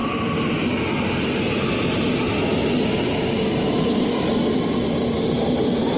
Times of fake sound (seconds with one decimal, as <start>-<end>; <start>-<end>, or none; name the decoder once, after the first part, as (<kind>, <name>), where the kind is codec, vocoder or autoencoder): none